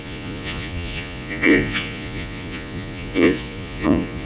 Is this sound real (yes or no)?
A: no